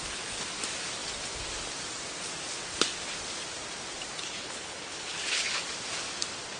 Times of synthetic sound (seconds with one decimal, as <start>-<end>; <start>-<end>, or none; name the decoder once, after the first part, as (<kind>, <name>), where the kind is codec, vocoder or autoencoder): 4.2-5.5 (codec, HILCodec)